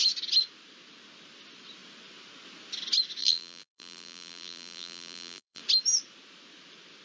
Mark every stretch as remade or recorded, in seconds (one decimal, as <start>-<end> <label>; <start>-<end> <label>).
0.0-3.2 recorded; 3.2-5.6 remade; 5.6-7.0 recorded